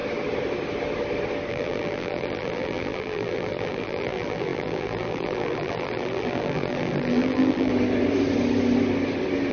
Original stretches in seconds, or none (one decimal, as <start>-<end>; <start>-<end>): 0.0-1.5; 7.7-9.5